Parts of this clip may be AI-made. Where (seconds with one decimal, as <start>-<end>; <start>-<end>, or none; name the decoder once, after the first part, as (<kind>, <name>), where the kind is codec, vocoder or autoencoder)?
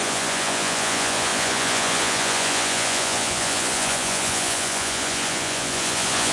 0.0-6.3 (vocoder, Vocos)